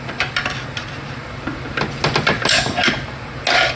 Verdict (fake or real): real